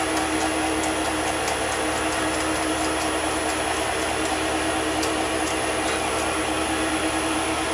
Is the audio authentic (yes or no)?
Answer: yes